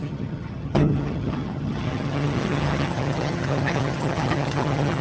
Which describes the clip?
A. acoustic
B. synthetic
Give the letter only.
B